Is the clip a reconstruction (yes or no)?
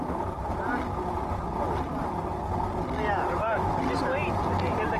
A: no